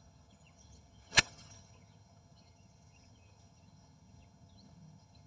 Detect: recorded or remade remade